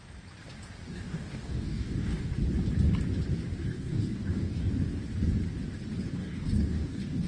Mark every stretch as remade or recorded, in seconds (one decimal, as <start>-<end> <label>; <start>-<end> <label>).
0.0-0.8 recorded; 0.8-2.3 remade; 2.3-3.6 recorded; 3.6-4.7 remade; 4.7-6.2 recorded; 6.2-7.3 remade